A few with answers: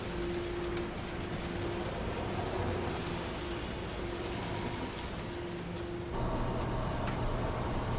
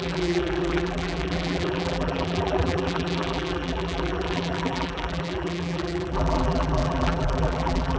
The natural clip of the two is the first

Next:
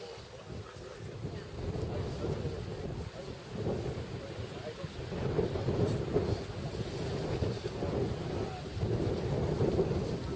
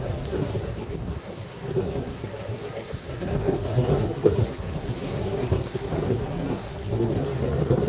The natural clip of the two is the first